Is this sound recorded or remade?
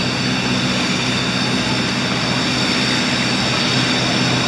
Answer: recorded